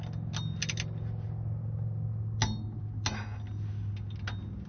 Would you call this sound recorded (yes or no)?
yes